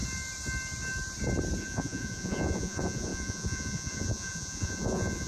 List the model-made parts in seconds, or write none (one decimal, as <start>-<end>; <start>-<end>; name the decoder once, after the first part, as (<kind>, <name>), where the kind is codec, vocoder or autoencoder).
1.6-5.3 (vocoder, Vocos)